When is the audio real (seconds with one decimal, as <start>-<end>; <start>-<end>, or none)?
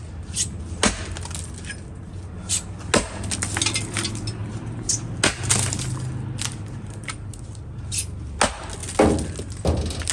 0.0-10.1